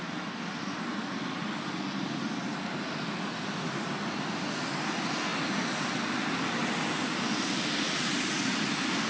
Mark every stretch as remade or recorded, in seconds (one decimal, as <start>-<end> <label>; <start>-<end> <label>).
0.0-9.1 recorded